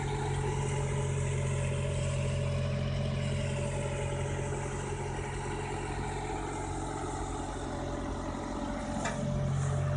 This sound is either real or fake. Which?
real